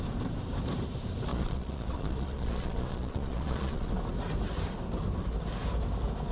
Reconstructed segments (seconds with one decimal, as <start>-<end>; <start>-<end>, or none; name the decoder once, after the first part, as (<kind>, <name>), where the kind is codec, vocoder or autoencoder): 1.3-3.9 (vocoder, Vocos)